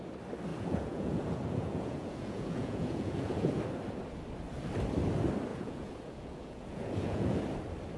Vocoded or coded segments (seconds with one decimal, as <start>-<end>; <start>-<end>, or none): 0.5-3.6; 5.5-7.4